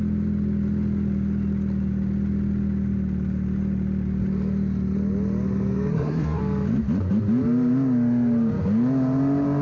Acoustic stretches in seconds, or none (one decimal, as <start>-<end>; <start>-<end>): 0.0-5.9; 6.4-9.6